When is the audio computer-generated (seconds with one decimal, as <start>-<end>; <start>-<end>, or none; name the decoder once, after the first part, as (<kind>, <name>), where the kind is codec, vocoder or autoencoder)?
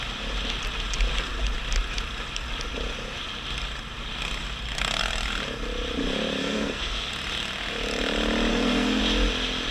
6.4-7.1 (codec, SNAC); 8.5-9.0